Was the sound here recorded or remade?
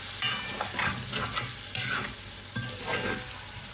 recorded